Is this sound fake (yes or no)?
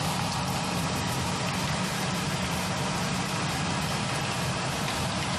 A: no